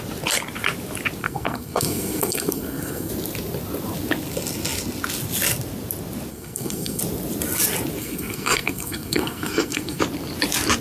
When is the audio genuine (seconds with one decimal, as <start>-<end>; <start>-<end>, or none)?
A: 0.0-1.2; 3.1-6.3; 7.0-8.0; 10.0-10.8

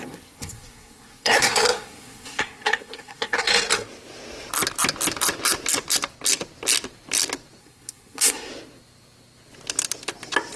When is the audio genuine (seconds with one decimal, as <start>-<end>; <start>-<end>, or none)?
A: 3.5-7.6; 8.5-10.6

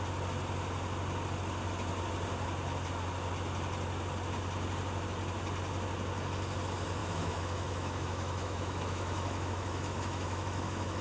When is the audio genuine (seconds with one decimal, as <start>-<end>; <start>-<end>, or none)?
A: 0.0-7.0

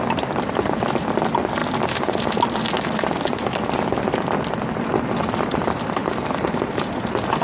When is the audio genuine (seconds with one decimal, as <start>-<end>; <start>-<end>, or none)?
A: 0.0-7.4

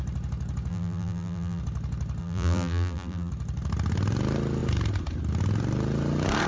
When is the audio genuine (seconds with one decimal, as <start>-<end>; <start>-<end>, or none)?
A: 0.0-0.7; 1.6-2.2; 3.3-6.5

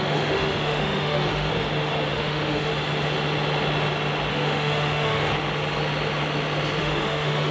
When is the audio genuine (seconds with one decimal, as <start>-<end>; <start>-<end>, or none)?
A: 1.5-2.1; 2.7-4.3; 5.3-6.8

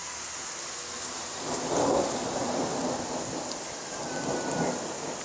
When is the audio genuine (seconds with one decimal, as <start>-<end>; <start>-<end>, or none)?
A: 0.0-0.9; 2.8-5.2

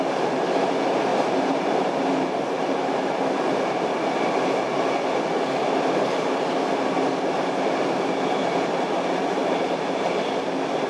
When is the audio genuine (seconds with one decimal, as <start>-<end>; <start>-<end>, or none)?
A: 0.0-1.1; 3.2-9.4; 10.0-10.9